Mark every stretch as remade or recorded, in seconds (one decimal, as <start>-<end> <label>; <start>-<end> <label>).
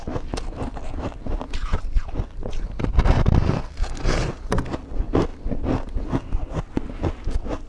0.0-7.7 recorded